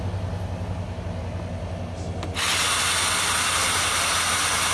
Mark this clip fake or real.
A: real